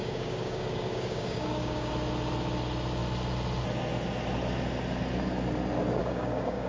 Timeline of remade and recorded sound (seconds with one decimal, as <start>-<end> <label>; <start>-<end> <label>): 0.0-1.9 remade; 1.9-6.0 recorded; 6.0-6.7 remade